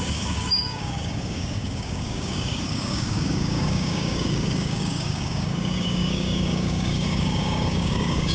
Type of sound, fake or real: fake